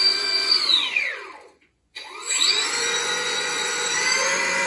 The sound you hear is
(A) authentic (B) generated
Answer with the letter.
B